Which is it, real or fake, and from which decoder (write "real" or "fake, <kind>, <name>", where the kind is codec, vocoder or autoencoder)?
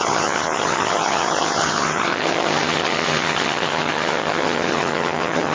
fake, vocoder, HiFi-GAN